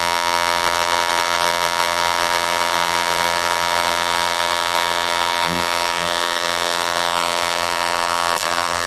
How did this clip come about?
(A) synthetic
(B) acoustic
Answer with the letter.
A